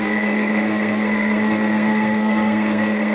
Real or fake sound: fake